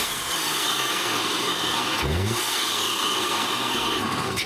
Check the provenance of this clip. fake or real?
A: fake